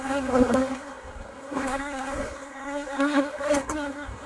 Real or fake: fake